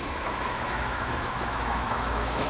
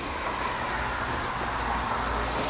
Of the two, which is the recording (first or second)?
second